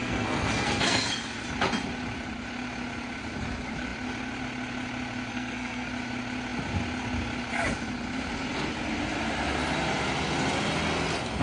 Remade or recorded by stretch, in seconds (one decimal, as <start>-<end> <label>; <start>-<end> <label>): 0.0-1.2 remade; 1.2-5.3 recorded; 5.3-5.9 remade; 5.9-11.4 recorded